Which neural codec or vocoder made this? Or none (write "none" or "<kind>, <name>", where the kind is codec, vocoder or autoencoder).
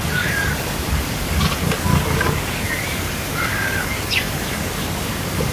codec, DAC